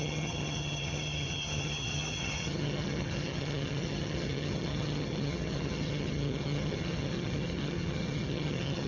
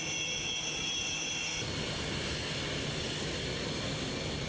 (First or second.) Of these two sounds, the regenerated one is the first